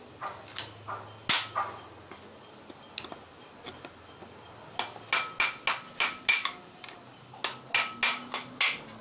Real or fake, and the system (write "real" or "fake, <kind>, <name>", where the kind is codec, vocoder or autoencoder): real